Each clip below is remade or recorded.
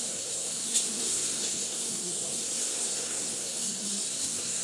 remade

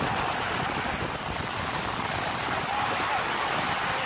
recorded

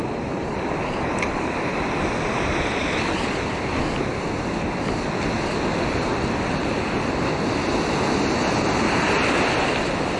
recorded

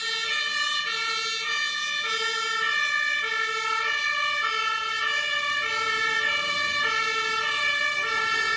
recorded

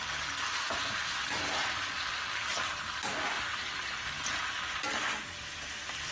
recorded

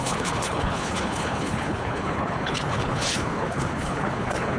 remade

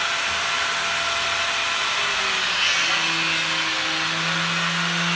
recorded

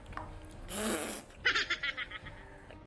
recorded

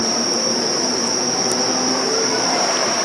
remade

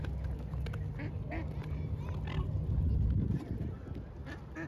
recorded